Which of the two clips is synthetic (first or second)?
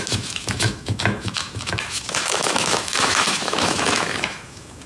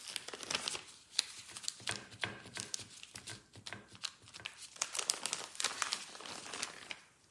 first